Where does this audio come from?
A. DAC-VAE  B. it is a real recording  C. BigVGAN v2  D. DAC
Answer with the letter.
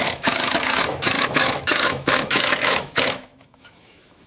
A